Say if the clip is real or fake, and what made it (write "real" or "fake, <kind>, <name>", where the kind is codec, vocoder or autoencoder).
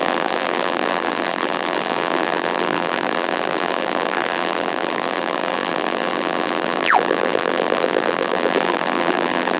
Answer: fake, vocoder, BigVGAN v2